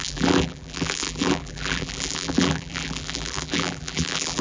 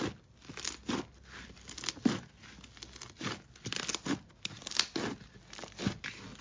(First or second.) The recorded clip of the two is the second